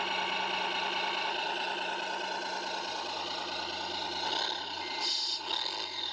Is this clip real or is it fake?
real